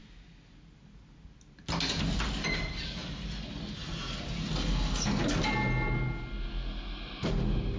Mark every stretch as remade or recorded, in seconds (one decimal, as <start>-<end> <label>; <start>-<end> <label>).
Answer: 0.0-7.8 recorded